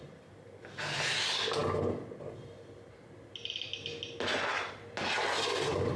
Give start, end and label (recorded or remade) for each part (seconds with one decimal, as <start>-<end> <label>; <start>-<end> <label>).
0.0-6.0 recorded